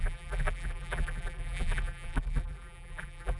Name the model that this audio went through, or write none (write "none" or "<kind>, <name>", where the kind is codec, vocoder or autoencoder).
vocoder, BigVGAN v2